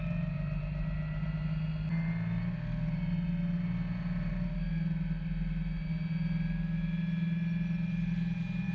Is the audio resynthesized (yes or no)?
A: no